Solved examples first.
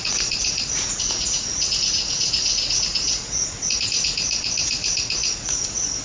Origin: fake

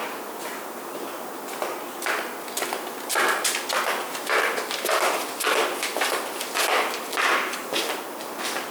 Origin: real